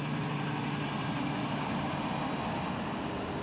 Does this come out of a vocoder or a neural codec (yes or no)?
no